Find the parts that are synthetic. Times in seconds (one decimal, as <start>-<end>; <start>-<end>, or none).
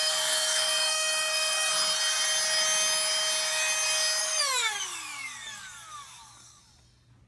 0.0-1.7; 4.2-6.6